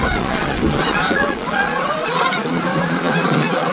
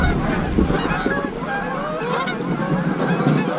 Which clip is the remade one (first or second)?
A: first